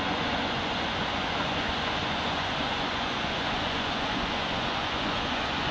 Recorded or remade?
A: remade